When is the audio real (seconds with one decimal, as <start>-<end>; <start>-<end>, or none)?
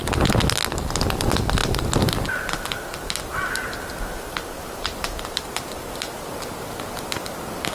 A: 0.0-7.7